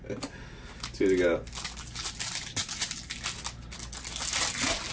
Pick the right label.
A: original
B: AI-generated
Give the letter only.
A